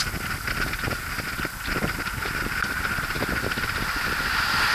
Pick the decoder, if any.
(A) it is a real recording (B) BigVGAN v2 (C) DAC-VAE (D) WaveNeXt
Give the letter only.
A